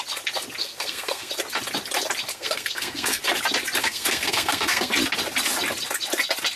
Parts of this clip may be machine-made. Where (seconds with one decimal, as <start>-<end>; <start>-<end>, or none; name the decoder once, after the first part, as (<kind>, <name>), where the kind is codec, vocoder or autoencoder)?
0.6-1.3 (codec, SNAC); 2.3-3.2; 3.8-4.9